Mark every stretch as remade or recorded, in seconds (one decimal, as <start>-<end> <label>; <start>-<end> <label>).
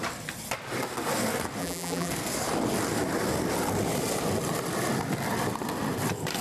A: 0.0-1.6 recorded; 1.6-2.1 remade; 2.1-6.4 recorded